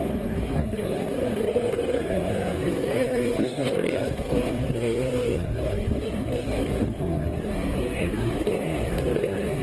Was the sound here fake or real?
fake